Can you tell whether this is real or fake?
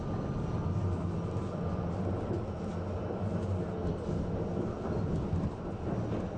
real